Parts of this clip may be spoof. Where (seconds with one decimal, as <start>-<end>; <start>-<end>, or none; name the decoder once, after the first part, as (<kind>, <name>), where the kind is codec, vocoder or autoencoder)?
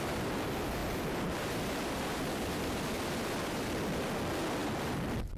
0.8-4.0 (vocoder, BigVGAN v2); 4.6-5.4